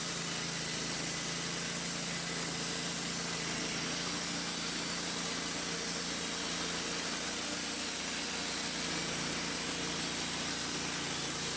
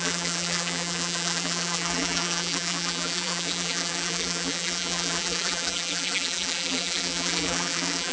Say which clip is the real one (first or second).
first